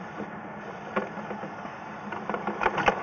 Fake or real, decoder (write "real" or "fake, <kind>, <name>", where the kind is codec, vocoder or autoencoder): real